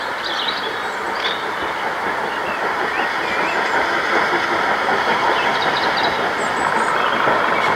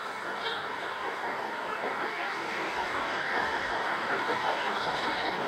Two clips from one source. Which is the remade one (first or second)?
second